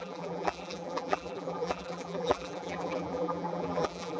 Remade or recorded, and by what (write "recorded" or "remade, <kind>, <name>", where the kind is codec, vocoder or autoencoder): remade, vocoder, BigVGAN v2